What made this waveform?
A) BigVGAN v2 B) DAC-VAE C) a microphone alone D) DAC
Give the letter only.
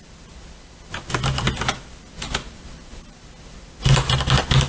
C